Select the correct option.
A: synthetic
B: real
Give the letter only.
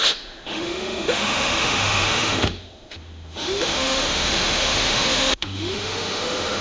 A